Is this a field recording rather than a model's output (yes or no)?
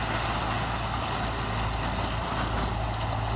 yes